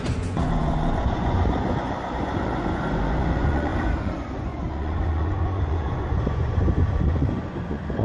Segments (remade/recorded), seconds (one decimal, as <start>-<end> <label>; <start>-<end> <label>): 0.0-8.0 remade